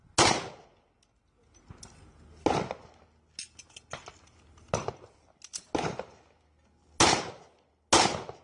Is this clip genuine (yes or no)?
yes